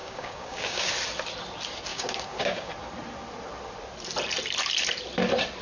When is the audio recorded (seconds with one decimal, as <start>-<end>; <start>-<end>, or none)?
0.9-1.9; 2.7-5.6